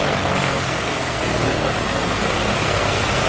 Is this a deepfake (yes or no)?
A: yes